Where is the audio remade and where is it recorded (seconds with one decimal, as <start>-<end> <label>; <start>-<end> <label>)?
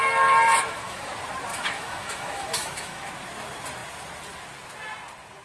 0.0-0.6 recorded; 0.6-1.1 remade; 1.1-1.5 recorded; 1.5-3.1 remade; 3.1-5.4 recorded